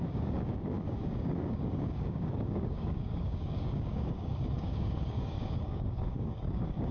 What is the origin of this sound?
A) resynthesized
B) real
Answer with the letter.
A